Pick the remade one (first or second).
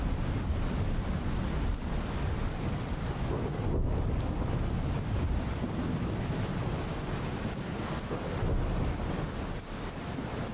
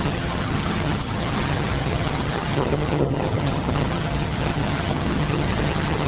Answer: second